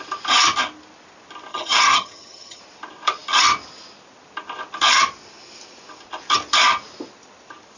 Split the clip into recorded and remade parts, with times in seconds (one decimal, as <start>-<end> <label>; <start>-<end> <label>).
0.0-1.5 recorded; 1.5-2.6 remade; 2.6-7.8 recorded

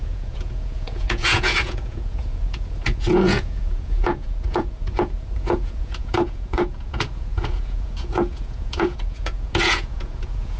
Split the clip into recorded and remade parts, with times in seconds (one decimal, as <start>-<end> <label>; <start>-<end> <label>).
0.0-10.6 remade

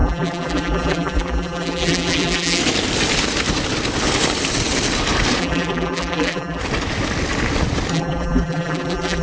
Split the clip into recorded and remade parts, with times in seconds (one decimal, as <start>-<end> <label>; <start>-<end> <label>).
0.0-2.6 remade; 2.6-5.4 recorded; 5.4-6.6 remade; 6.6-7.9 recorded; 7.9-9.2 remade

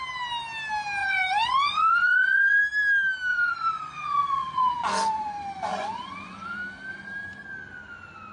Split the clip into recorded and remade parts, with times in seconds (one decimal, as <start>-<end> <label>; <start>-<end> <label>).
0.0-1.0 recorded; 1.0-2.6 remade; 2.6-3.3 recorded; 3.3-4.9 remade; 4.9-5.7 recorded; 5.7-6.6 remade; 6.6-8.3 recorded

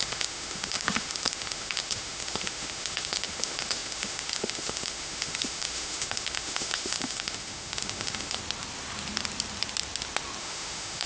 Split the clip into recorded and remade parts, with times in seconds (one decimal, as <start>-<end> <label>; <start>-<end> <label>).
0.0-8.4 remade; 8.4-10.4 recorded; 10.4-11.1 remade

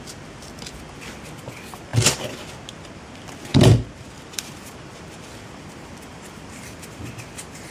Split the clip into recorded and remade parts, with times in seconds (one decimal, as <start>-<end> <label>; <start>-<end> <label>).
0.0-1.9 recorded; 1.9-2.5 remade; 2.5-3.5 recorded; 3.5-7.0 remade; 7.0-7.7 recorded

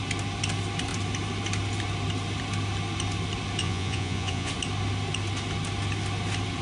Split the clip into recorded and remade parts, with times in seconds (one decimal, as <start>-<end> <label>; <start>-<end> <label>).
0.0-3.6 recorded; 3.6-4.5 remade; 4.5-6.6 recorded

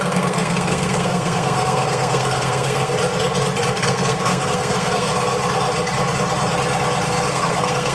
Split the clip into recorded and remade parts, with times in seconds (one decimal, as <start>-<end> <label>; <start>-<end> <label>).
0.0-2.9 remade; 2.9-3.7 recorded; 3.7-5.1 remade; 5.1-7.3 recorded; 7.3-7.9 remade